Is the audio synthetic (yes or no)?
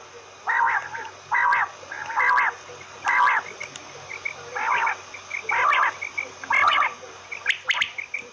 no